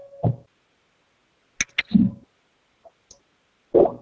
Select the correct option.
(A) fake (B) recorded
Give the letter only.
B